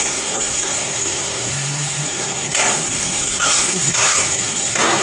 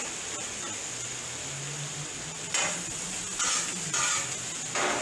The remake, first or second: first